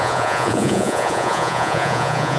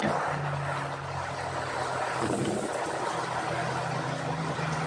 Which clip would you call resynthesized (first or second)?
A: first